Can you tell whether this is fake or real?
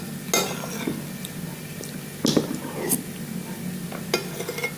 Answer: real